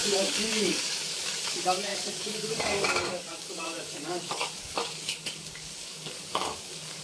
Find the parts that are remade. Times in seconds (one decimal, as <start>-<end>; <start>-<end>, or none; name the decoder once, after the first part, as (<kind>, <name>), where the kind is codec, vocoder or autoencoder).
0.0-7.0 (codec, DAC)